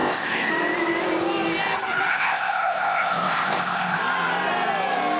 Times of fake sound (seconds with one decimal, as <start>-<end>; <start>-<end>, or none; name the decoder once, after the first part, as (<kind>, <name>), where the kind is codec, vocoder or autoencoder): 0.0-0.5 (codec, ZipCodec); 2.1-4.0